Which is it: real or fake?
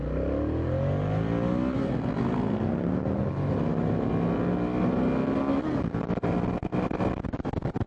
real